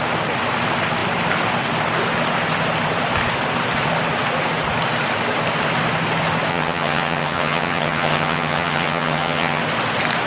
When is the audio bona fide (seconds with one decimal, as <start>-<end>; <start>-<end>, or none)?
0.0-6.5; 9.6-10.3